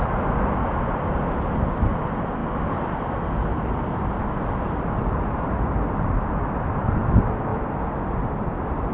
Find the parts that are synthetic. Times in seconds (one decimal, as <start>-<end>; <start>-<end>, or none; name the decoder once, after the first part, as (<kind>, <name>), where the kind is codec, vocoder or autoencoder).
none